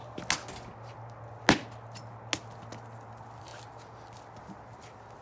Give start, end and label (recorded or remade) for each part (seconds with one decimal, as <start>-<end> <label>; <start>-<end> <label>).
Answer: 0.0-3.1 recorded; 3.1-3.5 remade; 3.5-4.4 recorded; 4.4-5.2 remade